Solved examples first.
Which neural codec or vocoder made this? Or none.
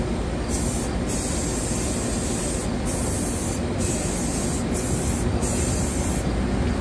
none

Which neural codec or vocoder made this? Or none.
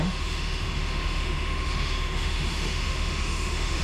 autoencoder, DAC-VAE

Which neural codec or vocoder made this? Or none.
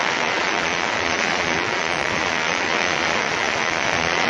vocoder, Vocos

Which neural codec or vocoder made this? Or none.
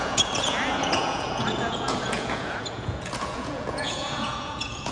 vocoder, Vocos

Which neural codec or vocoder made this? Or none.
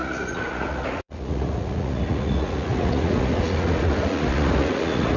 vocoder, Vocos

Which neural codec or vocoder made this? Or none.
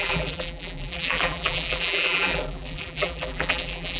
vocoder, BigVGAN v2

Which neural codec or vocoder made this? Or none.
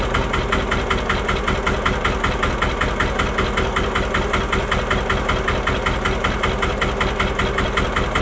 none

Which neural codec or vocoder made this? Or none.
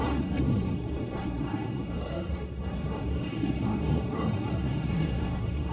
codec, SNAC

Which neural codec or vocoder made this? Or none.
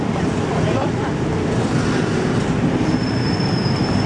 none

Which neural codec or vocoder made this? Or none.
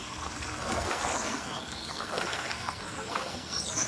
codec, SNAC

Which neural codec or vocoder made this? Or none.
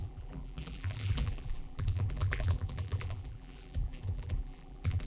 vocoder, BigVGAN v2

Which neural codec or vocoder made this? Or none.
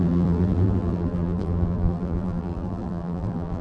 vocoder, BigVGAN v2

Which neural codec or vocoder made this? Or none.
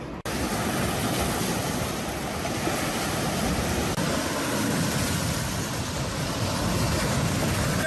none